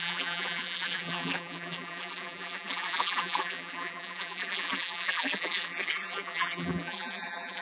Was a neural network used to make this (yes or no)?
yes